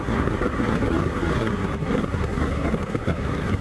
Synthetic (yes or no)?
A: yes